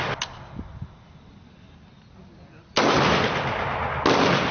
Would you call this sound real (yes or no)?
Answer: yes